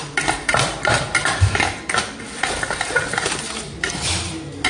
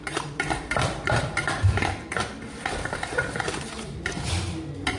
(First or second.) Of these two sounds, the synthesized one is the second